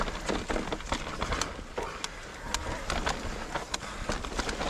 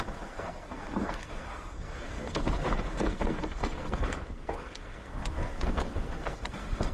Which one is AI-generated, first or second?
second